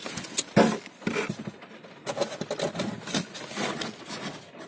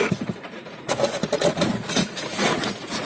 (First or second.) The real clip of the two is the first